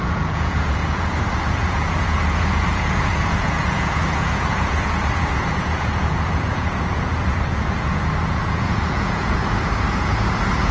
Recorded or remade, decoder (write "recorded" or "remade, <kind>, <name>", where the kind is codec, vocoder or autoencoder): remade, vocoder, Vocos